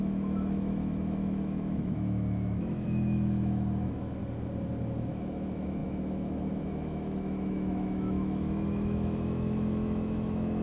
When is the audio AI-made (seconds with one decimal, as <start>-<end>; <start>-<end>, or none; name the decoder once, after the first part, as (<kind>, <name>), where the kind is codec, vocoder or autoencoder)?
0.0-4.2 (autoencoder, DAC-VAE); 5.1-10.6